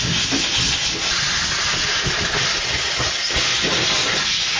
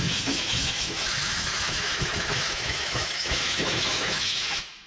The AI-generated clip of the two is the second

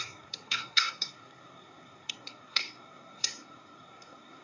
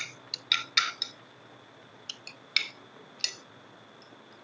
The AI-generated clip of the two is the first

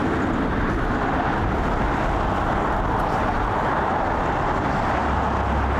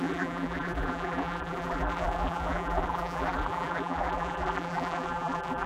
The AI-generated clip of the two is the second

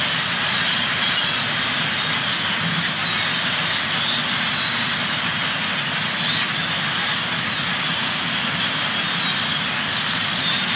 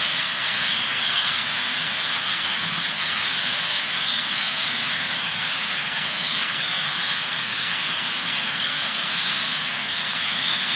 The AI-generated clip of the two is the second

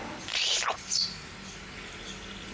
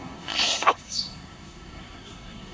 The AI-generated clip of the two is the second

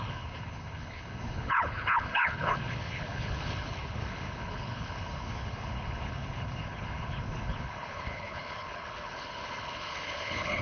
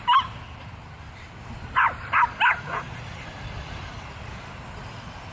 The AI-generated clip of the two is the first